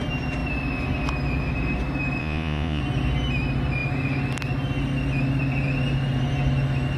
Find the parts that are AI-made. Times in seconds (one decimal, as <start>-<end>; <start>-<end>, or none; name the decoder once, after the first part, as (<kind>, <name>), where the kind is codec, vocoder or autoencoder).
2.2-2.8 (vocoder, Vocos)